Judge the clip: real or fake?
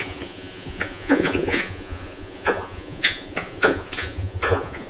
fake